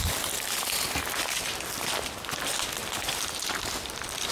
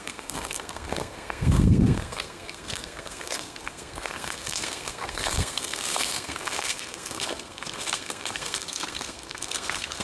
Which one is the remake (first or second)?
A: second